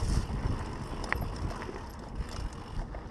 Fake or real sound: real